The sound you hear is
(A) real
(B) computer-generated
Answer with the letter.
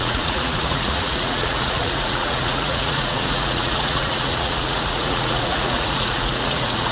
B